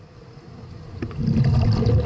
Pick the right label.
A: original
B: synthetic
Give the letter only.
A